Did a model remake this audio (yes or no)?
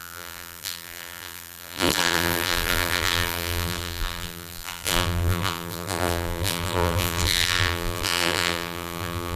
yes